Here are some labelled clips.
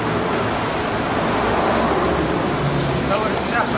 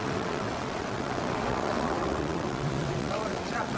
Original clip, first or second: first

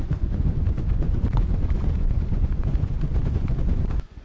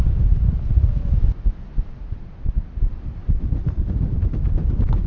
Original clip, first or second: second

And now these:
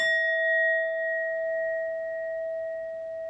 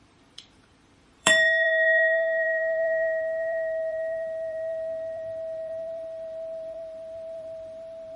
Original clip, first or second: first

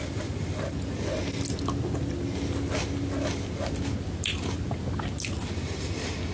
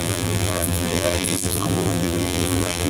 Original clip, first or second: first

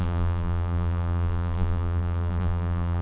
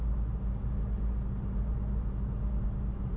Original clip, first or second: second